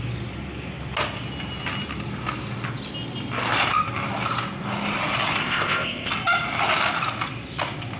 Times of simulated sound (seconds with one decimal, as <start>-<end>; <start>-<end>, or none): 5.4-6.1